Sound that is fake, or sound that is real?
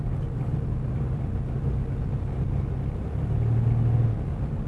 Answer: real